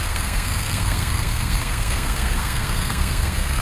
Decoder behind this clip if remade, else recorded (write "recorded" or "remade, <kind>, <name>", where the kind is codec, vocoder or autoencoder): remade, codec, SNAC